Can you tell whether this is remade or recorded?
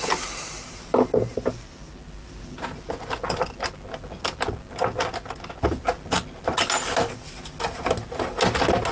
recorded